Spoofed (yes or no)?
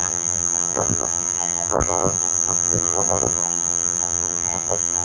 yes